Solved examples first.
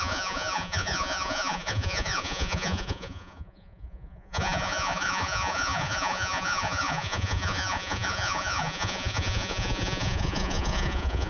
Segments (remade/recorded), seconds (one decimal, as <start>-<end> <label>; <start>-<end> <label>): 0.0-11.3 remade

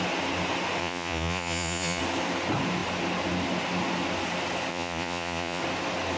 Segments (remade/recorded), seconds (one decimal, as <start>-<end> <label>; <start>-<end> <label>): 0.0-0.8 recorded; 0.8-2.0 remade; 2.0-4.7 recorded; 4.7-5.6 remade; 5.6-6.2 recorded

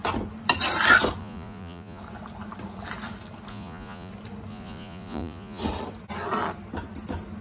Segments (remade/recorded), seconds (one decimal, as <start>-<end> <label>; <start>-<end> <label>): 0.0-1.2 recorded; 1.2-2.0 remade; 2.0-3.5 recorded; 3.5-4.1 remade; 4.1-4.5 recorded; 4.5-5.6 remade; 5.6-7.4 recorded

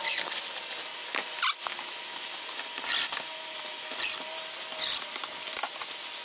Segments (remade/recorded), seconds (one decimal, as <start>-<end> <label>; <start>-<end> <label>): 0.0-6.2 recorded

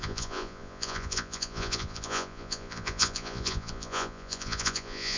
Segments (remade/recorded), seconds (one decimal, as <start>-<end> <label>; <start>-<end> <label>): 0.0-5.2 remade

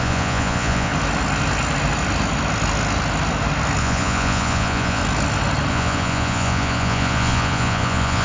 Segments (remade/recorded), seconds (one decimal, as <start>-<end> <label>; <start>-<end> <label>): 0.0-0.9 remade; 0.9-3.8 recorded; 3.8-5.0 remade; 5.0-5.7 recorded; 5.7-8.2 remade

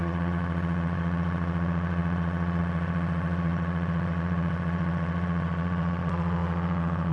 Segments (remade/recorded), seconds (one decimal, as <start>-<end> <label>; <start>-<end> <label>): 0.0-7.1 remade

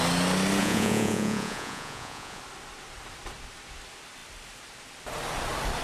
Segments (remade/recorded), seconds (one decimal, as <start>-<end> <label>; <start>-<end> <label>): 0.0-0.6 recorded; 0.6-2.4 remade; 2.4-5.8 recorded